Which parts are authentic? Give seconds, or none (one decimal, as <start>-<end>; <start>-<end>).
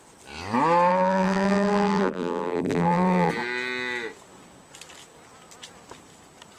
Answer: 0.0-0.9; 3.3-6.6